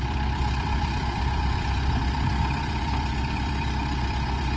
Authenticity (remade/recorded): remade